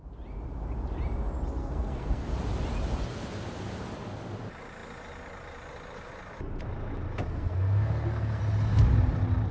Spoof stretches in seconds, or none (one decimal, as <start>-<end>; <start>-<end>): 1.6-2.3; 7.3-8.4